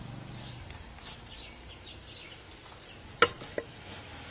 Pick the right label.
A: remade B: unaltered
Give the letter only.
B